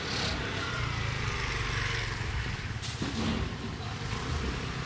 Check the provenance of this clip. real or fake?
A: real